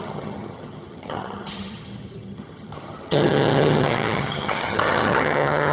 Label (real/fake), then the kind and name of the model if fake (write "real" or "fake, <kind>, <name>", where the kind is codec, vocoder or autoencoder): fake, vocoder, HiFi-GAN